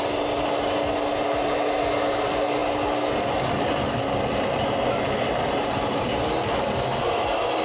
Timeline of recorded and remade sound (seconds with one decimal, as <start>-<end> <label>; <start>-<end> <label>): 0.0-7.6 recorded